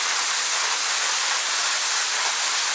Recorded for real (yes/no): yes